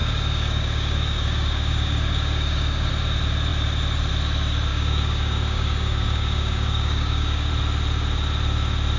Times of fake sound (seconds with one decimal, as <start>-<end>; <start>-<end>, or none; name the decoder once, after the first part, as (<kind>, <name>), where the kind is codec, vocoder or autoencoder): 0.0-2.9 (codec, DAC); 4.7-7.5